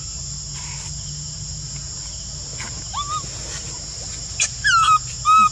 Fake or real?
real